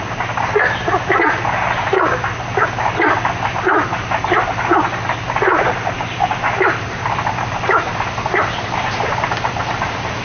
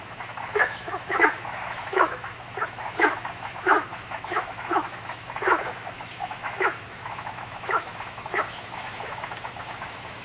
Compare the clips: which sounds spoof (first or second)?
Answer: second